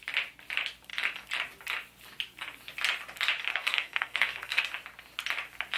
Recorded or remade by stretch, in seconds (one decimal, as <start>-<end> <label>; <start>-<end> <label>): 0.0-3.5 recorded; 3.5-4.6 remade; 4.6-5.8 recorded